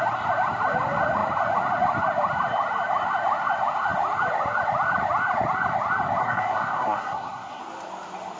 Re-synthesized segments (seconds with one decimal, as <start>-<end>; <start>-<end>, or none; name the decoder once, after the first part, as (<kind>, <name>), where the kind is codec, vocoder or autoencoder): 6.2-7.6 (codec, SNAC)